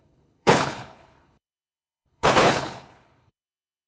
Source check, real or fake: fake